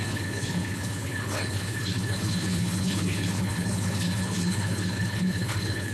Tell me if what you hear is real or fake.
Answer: fake